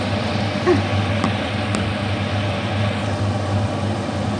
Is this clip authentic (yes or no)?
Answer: yes